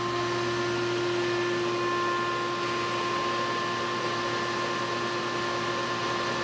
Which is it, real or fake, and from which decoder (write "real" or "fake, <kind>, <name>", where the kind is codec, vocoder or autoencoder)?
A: real